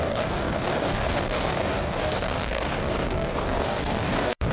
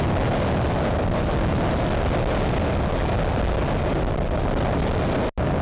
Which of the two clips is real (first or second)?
second